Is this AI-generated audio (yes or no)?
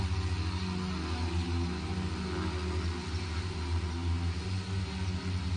no